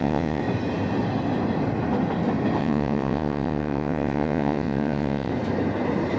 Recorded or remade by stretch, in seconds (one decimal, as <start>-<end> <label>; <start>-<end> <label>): 0.0-0.4 remade; 0.4-2.6 recorded; 2.6-5.3 remade; 5.3-6.2 recorded